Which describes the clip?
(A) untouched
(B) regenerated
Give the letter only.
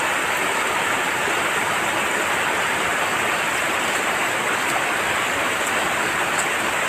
A